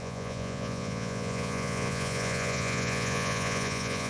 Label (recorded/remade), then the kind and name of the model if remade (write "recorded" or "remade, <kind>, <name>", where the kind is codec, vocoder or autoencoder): remade, vocoder, Vocos